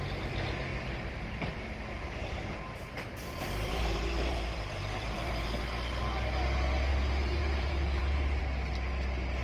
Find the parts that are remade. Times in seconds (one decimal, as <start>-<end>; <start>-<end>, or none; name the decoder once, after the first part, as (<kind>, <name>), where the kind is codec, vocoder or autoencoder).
0.7-5.6 (vocoder, BigVGAN v2); 6.9-8.4

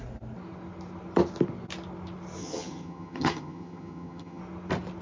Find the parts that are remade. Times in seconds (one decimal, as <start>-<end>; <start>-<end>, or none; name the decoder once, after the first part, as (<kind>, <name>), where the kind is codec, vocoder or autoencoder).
2.4-4.4 (vocoder, HiFi-GAN)

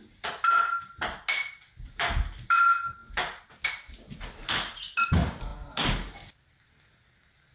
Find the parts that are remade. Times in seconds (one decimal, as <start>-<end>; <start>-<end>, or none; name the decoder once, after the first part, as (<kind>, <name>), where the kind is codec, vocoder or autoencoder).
none

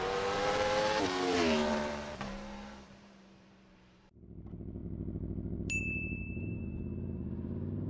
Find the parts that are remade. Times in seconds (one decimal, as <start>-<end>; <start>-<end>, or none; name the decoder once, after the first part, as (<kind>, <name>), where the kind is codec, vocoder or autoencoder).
0.0-4.8 (vocoder, BigVGAN v2); 5.8-7.9

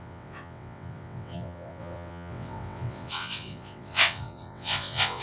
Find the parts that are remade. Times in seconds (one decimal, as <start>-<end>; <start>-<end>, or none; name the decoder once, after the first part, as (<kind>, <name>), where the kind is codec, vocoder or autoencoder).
0.0-5.2 (vocoder, WaveNeXt)

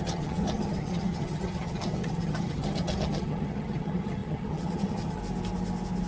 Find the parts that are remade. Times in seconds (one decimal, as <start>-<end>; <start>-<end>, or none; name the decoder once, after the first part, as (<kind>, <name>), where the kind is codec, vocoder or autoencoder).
0.0-5.2 (vocoder, HiFi-GAN)

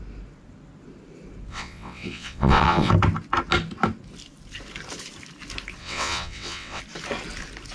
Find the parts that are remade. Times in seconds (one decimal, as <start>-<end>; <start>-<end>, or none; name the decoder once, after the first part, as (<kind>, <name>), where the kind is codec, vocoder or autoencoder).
1.5-2.9 (vocoder, WaveNeXt); 5.8-6.8

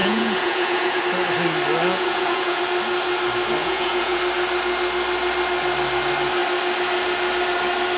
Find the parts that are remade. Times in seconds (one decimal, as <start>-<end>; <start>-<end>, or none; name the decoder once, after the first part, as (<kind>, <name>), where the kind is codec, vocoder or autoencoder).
0.0-1.0 (vocoder, Vocos); 1.9-2.6; 3.6-4.2